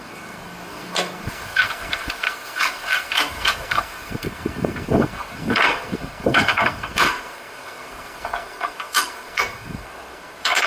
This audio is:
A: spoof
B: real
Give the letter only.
A